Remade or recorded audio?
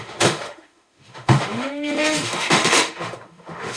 remade